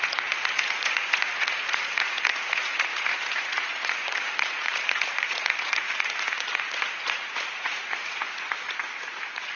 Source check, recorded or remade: remade